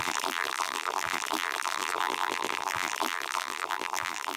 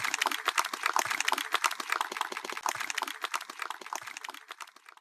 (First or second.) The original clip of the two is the second